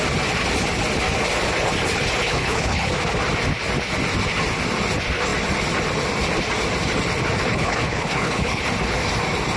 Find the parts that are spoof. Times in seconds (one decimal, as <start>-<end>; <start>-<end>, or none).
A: 2.2-2.9; 7.5-8.6